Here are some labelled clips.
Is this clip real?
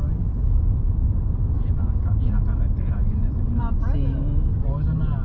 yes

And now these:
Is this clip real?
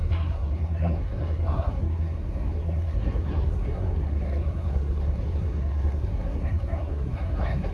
no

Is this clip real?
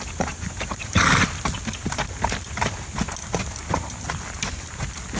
yes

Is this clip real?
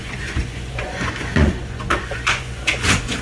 no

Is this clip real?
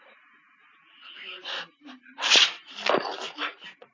yes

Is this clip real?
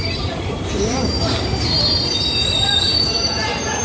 no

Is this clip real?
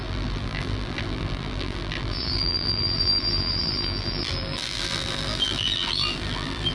no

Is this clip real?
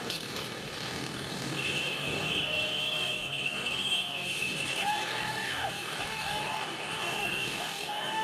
no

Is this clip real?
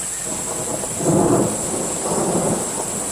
yes